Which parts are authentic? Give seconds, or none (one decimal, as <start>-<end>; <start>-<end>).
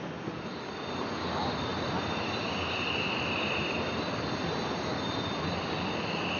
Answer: 0.0-6.4